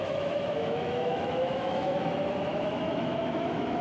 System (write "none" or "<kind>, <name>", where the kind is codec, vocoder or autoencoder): autoencoder, DAC-VAE